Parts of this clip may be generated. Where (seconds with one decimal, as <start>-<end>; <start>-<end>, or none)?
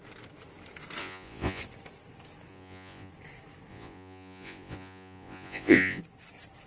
1.0-1.6; 2.5-3.1; 3.7-6.0